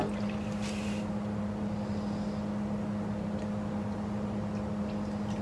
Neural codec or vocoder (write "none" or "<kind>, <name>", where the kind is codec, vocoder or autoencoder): none